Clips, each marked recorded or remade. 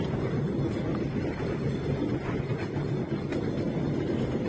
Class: recorded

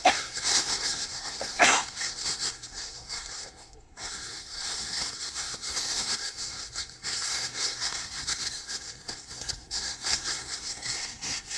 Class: remade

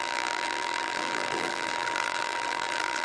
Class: remade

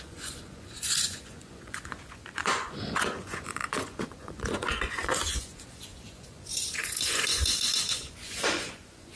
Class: remade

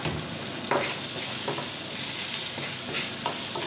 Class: recorded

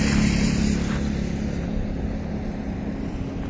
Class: recorded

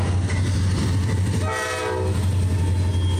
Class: recorded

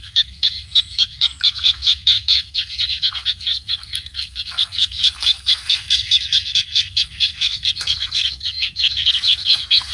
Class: remade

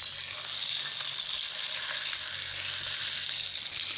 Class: recorded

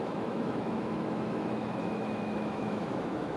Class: remade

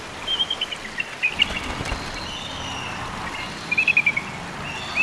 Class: recorded